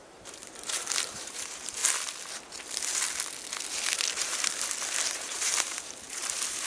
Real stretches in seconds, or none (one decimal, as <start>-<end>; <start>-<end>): 1.8-5.1